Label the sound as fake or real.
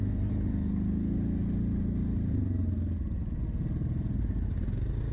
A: real